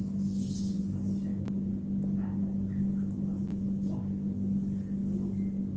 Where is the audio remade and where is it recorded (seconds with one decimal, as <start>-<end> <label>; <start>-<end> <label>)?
0.0-5.8 recorded